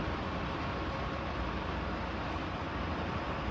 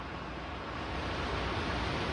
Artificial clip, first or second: first